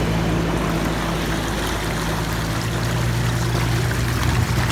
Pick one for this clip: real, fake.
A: real